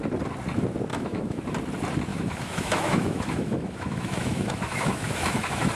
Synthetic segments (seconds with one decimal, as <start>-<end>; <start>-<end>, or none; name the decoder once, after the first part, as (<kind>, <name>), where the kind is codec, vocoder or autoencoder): 0.9-1.4 (autoencoder, DAC-VAE); 2.1-5.7